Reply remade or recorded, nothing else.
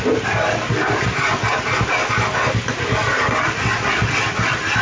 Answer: recorded